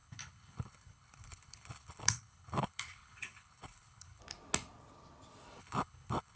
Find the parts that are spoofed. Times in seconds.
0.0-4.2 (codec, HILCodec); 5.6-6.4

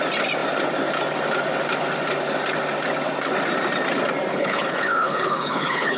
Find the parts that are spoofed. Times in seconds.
4.3-6.0 (codec, HILCodec)

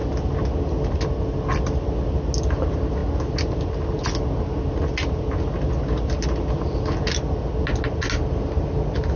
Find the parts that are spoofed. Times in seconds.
none